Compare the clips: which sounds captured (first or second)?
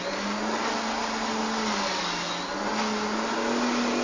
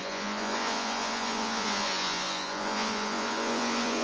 first